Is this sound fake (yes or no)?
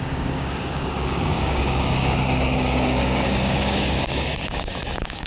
yes